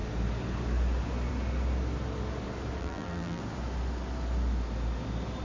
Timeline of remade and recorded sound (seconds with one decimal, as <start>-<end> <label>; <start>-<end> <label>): 0.0-2.8 recorded; 2.8-3.4 remade; 3.4-5.4 recorded